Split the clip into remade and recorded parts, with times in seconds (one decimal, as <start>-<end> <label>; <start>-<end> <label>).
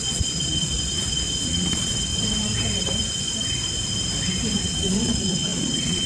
0.0-2.1 remade; 2.1-4.6 recorded; 4.6-6.1 remade